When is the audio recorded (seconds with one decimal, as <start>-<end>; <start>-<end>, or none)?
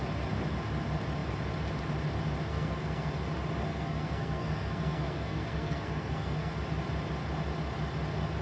0.0-2.5; 3.1-3.7; 6.5-8.4